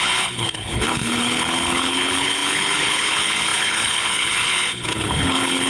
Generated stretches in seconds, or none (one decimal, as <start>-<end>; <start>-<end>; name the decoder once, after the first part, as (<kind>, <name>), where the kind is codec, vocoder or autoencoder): 0.0-5.7 (codec, HILCodec)